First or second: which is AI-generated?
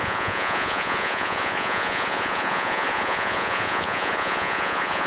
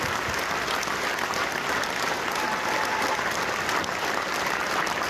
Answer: first